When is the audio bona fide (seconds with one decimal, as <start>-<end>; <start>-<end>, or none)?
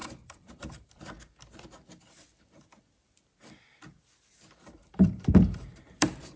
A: 1.0-4.8